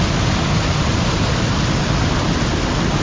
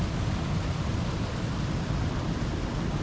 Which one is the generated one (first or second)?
second